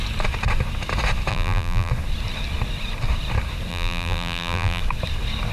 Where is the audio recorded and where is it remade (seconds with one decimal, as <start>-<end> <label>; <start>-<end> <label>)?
0.0-1.3 recorded; 1.3-1.9 remade; 1.9-3.7 recorded; 3.7-4.8 remade; 4.8-5.5 recorded